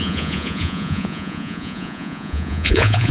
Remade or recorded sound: remade